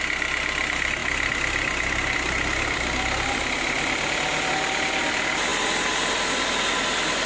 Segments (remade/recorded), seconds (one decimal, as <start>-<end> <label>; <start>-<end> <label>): 0.0-7.3 recorded